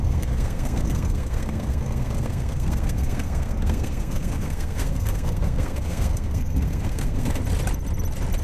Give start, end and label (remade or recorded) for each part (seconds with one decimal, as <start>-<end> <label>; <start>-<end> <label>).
0.0-7.4 remade; 7.4-8.4 recorded